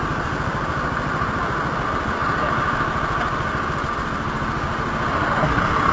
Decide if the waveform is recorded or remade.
recorded